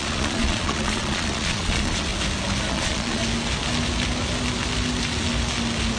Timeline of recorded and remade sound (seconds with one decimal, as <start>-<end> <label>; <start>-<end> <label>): 0.0-2.1 remade; 2.1-2.7 recorded; 2.7-3.2 remade; 3.2-6.0 recorded